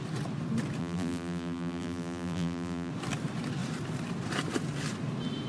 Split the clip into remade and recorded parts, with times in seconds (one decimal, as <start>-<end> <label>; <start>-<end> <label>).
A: 0.0-0.8 recorded; 0.8-2.9 remade; 2.9-5.5 recorded